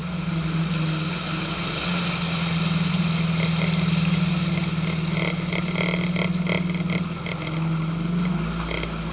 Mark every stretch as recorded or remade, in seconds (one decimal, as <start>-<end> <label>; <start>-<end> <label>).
0.0-9.1 recorded